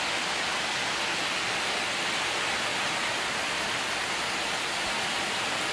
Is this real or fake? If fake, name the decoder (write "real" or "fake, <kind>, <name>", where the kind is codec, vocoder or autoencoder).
real